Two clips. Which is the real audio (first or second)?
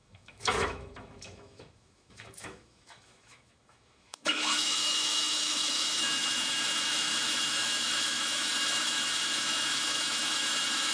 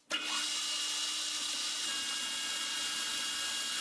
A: second